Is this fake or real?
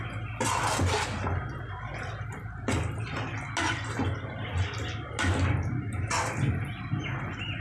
real